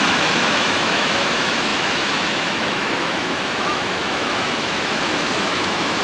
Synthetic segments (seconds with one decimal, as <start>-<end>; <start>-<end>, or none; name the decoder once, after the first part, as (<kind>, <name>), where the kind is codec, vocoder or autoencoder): 0.0-6.0 (autoencoder, DAC-VAE)